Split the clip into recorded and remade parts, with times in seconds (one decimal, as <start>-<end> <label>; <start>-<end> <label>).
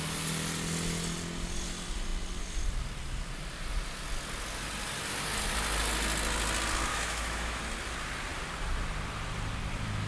0.0-6.9 recorded; 6.9-7.6 remade; 7.6-10.1 recorded